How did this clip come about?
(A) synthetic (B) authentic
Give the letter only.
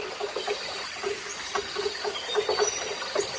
B